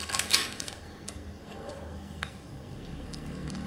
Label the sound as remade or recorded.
remade